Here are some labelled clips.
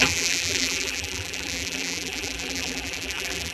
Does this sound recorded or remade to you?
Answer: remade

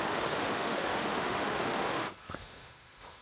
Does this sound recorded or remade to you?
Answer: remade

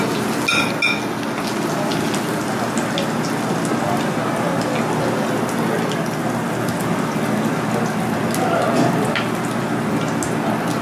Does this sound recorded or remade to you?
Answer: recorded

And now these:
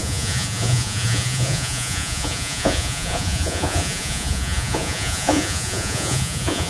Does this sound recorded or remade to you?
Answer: remade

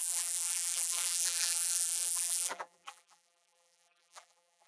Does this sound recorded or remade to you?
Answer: remade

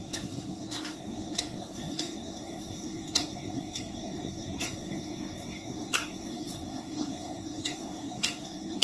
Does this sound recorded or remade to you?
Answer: remade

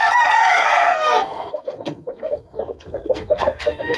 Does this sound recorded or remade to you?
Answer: remade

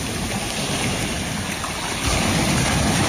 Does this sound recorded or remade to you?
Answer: remade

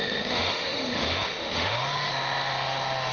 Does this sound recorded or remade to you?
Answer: remade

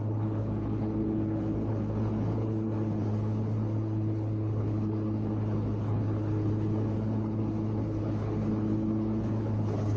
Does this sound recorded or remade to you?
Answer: remade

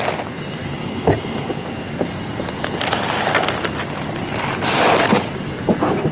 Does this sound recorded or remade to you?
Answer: recorded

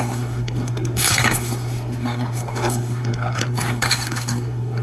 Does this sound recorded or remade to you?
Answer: remade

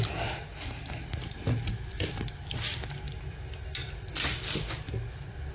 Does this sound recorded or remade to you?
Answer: recorded